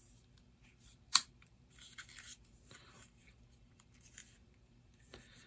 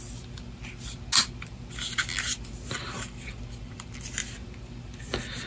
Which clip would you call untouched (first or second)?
second